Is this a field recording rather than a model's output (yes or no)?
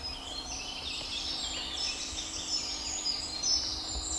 yes